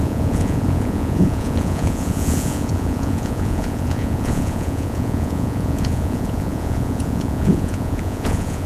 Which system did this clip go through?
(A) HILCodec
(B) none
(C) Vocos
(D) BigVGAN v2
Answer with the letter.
C